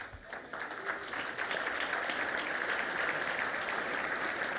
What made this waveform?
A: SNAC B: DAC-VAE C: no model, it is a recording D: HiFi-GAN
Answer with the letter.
C